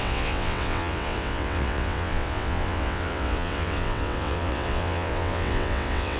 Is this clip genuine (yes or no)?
no